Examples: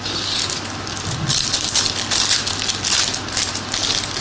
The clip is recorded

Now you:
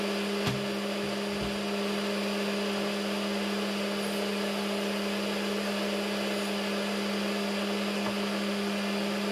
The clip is recorded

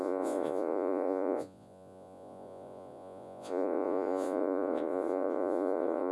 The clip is remade